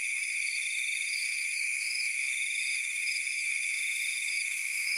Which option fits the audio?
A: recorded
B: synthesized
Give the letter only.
B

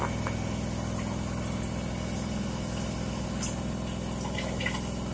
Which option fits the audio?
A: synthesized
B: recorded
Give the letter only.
B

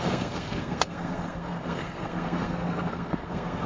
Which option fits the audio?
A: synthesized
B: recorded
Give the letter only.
A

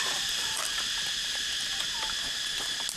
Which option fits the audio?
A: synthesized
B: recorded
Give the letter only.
B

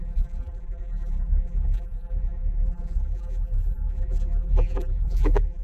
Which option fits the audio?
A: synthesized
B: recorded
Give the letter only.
A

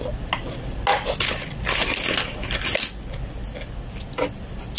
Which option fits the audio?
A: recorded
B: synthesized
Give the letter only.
A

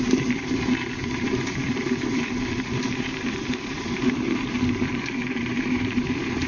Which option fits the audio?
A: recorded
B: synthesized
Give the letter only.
B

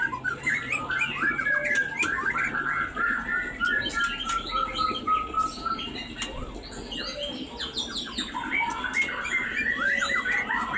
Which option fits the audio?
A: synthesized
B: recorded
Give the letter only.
B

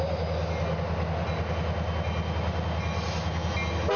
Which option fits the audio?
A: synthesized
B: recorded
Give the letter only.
B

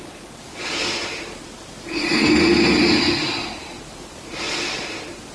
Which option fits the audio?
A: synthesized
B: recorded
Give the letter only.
A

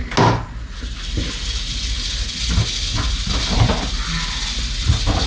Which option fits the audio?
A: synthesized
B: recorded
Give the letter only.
B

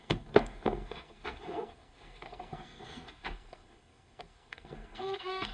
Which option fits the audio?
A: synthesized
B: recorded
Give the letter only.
A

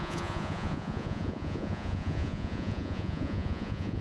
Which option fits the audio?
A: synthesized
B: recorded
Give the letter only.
A